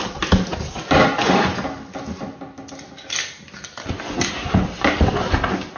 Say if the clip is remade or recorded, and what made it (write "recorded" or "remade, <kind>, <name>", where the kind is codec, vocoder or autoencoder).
recorded